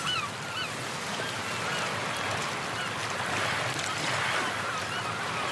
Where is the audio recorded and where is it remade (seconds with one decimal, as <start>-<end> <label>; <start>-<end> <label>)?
0.0-5.5 recorded